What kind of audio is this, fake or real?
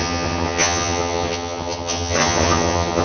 fake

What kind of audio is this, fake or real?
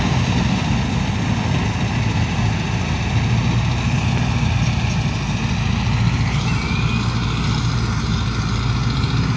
real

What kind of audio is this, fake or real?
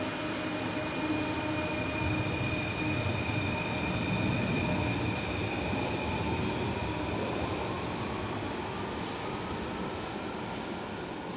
real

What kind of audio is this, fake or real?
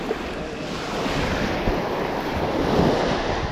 real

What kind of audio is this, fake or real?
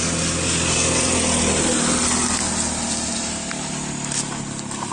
real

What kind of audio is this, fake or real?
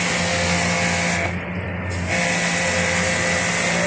real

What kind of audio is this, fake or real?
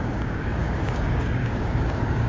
fake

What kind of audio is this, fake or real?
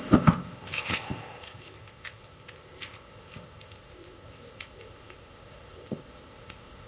fake